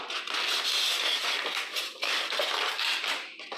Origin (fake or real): real